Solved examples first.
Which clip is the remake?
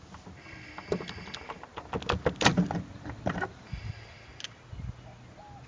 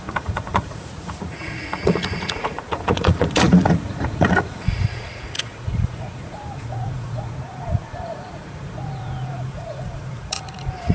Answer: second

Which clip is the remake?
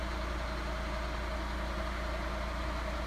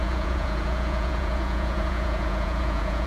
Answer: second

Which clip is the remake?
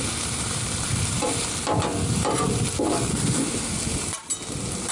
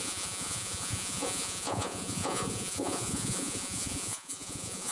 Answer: second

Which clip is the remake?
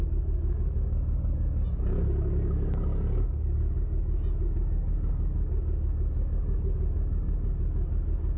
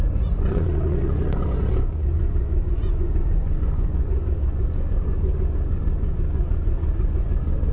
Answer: second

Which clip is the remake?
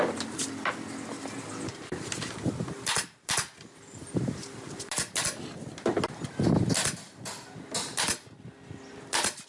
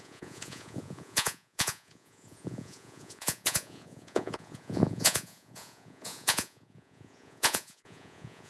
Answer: second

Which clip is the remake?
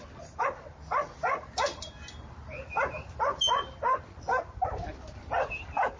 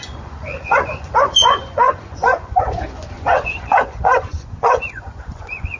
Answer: second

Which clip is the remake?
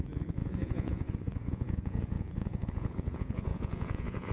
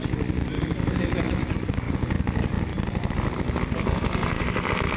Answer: first